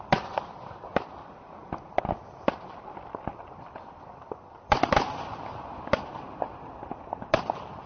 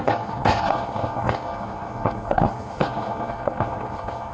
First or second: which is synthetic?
second